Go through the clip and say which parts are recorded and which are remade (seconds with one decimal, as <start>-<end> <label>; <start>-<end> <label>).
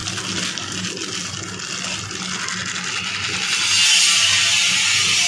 0.0-5.3 recorded